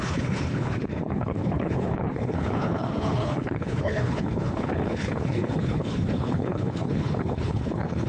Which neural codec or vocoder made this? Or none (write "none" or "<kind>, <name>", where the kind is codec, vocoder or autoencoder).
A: codec, HILCodec